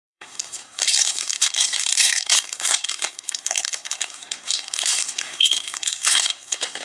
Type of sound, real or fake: fake